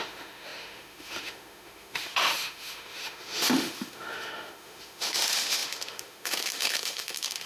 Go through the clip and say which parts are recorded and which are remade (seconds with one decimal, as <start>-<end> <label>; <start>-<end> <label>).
0.0-7.5 remade